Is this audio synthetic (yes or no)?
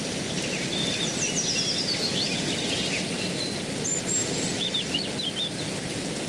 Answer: no